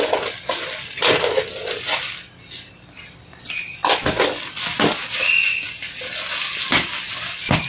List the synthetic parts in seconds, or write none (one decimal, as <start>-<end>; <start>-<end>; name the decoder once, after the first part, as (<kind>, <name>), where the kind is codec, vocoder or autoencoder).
none